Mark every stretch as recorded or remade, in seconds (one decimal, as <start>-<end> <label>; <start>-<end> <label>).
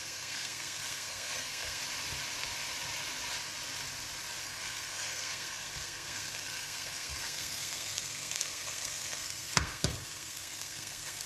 0.0-1.8 remade; 1.8-4.4 recorded; 4.4-11.3 remade